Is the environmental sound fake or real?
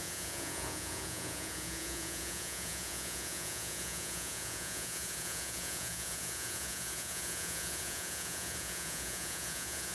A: fake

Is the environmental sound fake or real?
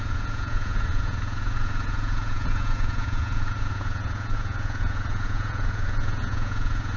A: fake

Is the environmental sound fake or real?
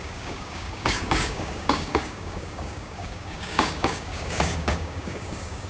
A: fake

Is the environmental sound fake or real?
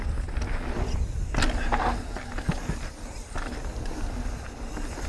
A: real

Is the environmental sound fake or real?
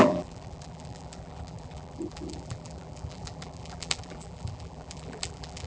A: fake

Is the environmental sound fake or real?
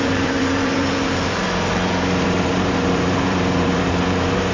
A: fake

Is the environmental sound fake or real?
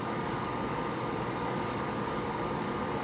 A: fake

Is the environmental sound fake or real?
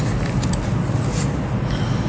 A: real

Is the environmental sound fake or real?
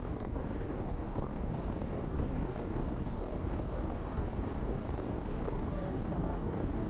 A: fake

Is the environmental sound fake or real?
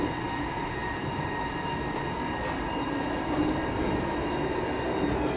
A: real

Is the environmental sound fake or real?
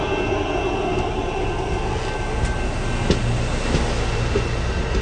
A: real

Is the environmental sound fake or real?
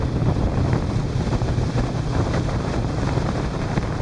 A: fake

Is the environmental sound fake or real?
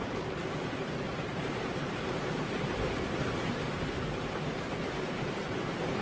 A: fake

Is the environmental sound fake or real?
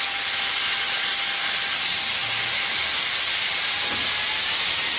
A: real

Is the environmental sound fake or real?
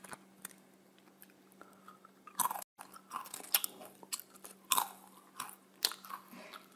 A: real